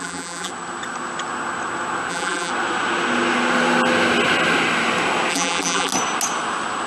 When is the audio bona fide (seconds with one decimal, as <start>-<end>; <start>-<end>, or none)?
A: 0.5-2.1; 2.5-5.3; 5.9-6.9